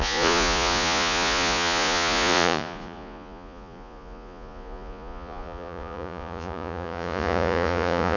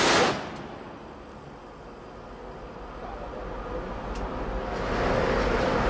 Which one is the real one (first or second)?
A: second